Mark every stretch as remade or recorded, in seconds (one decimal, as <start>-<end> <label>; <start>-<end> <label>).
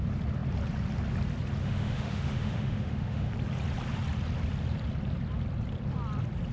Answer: 0.0-1.6 recorded; 1.6-3.3 remade; 3.3-6.5 recorded